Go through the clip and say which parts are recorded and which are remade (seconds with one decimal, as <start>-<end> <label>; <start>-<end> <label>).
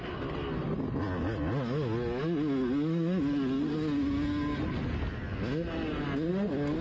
0.0-6.8 recorded